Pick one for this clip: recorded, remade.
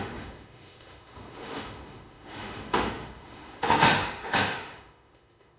remade